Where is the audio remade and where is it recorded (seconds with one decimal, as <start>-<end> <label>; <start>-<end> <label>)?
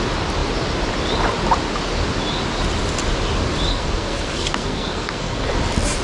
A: 0.0-3.7 recorded; 3.7-5.5 remade; 5.5-6.0 recorded